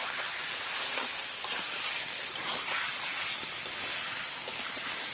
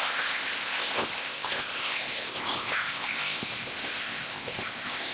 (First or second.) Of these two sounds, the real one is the first